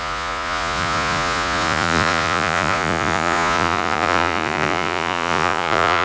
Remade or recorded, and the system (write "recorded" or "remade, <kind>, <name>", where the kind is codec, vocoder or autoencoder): remade, vocoder, Vocos